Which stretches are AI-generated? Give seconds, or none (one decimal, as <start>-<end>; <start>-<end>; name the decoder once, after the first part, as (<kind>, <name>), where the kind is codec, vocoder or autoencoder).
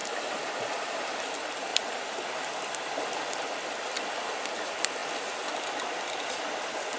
0.0-1.1 (vocoder, BigVGAN v2); 1.7-2.2